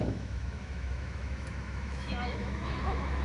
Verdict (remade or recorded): remade